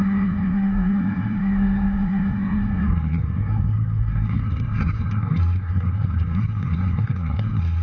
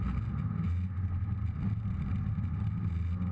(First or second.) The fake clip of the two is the first